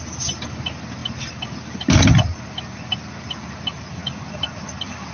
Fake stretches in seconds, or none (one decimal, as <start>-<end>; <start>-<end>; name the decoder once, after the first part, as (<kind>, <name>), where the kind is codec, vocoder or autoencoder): none